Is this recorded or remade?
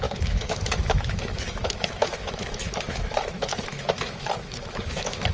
remade